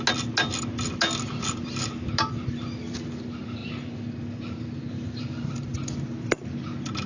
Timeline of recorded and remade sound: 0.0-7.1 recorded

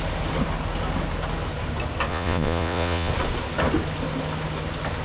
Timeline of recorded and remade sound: 0.0-2.1 recorded; 2.1-3.1 remade; 3.1-5.0 recorded